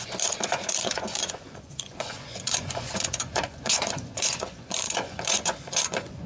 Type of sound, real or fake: fake